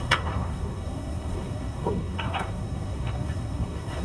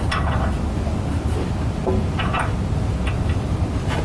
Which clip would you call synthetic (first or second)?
first